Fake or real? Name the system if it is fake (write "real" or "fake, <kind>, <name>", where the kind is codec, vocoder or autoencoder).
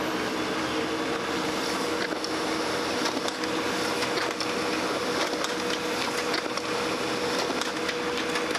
real